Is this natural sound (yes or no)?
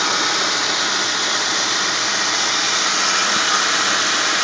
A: yes